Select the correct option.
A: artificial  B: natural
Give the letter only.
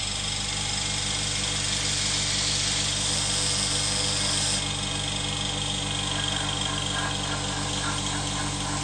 B